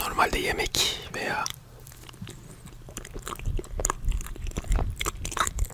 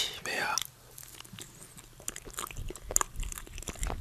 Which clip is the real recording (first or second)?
second